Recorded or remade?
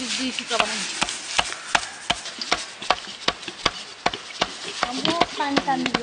recorded